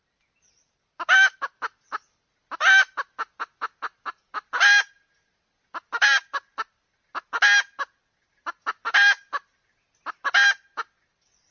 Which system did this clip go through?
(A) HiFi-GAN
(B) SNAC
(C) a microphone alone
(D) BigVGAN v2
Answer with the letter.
C